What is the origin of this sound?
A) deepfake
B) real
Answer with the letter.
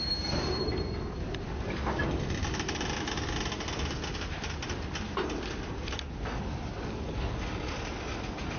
B